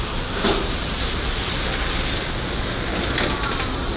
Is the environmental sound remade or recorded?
recorded